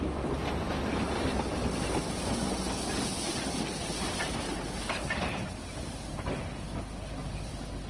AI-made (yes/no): no